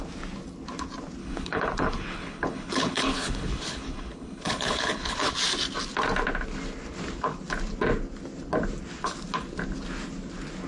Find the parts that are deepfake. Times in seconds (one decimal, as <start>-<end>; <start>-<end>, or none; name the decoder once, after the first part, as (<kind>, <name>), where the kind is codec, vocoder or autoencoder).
1.2-5.3 (codec, HILCodec)